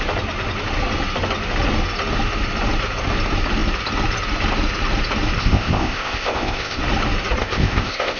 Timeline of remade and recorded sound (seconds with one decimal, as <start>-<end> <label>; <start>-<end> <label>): 0.0-5.4 recorded; 5.4-6.8 remade; 6.8-7.4 recorded; 7.4-8.2 remade